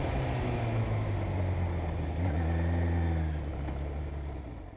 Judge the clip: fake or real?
real